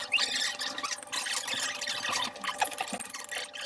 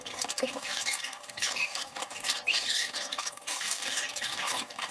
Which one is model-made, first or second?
second